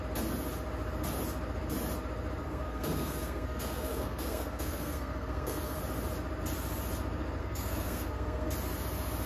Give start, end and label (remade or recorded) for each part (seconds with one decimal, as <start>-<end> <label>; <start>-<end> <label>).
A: 0.0-2.4 recorded; 2.4-5.8 remade; 5.8-7.4 recorded; 7.4-8.5 remade; 8.5-9.3 recorded